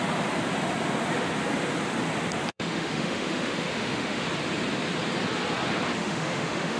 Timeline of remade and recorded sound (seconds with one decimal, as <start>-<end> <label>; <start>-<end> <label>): 0.0-2.5 recorded; 2.5-4.2 remade; 4.2-6.0 recorded; 6.0-6.8 remade